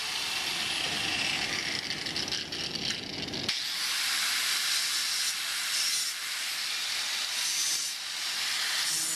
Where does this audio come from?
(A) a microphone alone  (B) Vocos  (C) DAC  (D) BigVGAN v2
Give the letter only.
A